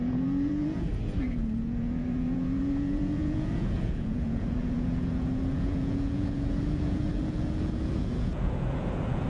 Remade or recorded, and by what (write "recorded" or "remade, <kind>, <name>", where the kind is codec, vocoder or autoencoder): remade, vocoder, Vocos